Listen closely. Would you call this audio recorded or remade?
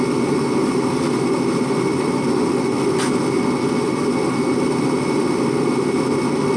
recorded